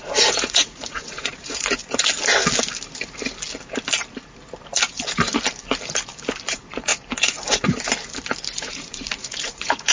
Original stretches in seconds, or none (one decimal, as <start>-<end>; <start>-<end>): 1.8-6.5; 6.9-8.6